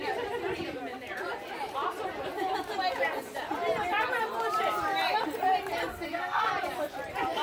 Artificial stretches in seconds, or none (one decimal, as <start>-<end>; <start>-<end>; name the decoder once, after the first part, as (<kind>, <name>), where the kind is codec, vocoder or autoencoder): 5.9-6.5 (codec, SNAC)